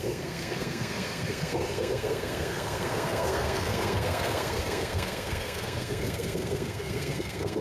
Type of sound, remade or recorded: remade